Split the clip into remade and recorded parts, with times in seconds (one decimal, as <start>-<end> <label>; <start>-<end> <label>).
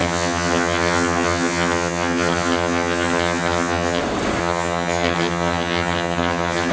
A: 0.0-4.0 remade; 4.0-4.4 recorded; 4.4-6.7 remade